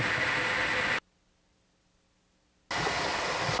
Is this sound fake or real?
real